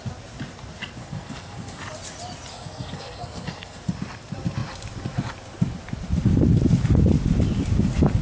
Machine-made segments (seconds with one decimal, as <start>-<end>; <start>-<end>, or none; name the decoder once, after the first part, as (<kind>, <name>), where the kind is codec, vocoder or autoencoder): 1.0-1.8 (codec, SNAC); 2.5-3.8